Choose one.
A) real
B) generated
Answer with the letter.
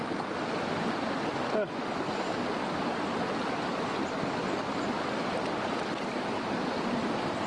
A